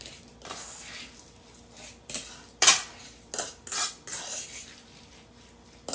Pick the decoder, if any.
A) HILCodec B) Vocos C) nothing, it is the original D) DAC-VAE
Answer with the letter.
C